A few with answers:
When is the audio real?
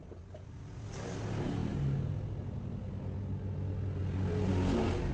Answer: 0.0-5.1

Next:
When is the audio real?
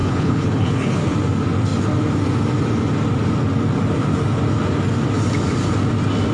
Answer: 1.2-6.3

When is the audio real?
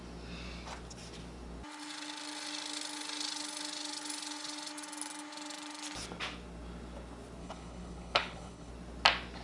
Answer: 0.0-7.4; 8.7-9.4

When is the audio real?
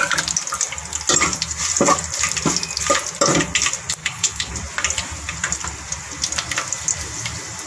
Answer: 0.0-4.0; 4.5-7.7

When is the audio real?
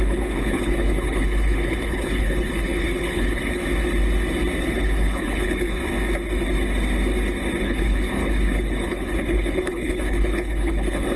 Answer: 3.6-4.6; 5.8-7.6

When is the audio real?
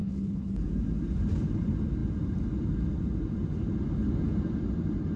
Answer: 0.5-5.2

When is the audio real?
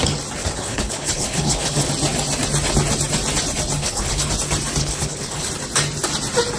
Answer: 0.0-0.4; 1.9-3.8; 4.3-4.8; 5.5-6.6